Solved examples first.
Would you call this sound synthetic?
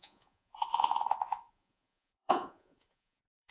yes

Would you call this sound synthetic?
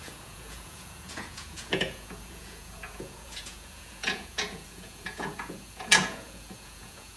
yes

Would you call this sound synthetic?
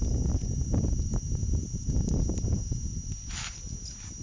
no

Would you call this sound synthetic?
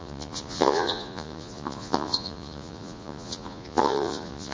yes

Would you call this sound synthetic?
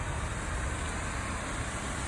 no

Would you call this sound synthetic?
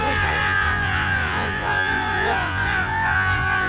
yes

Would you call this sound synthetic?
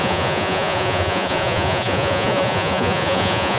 yes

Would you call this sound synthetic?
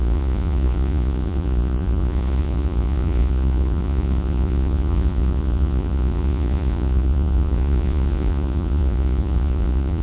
yes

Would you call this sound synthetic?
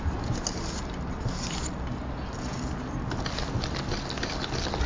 no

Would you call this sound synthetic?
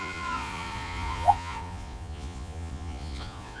yes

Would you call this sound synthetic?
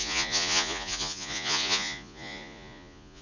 yes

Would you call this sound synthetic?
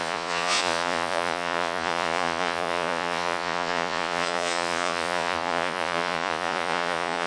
yes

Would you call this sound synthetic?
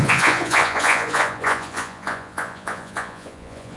yes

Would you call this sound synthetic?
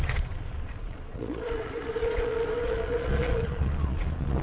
yes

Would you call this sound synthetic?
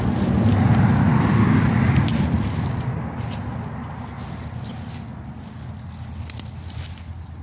no